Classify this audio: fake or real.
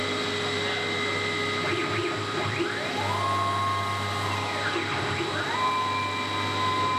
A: real